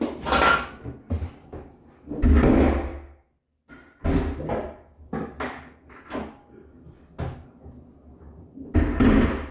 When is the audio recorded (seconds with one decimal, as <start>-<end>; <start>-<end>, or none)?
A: 0.0-9.5